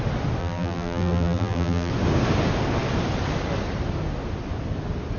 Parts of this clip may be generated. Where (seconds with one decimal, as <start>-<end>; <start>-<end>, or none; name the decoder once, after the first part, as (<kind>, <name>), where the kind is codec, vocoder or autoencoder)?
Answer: 0.4-1.9 (vocoder, BigVGAN v2)